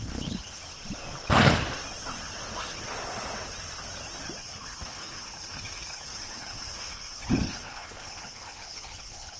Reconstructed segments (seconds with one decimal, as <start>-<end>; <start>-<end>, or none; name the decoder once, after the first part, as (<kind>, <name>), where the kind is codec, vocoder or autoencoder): 0.0-0.6 (codec, HILCodec); 4.4-9.4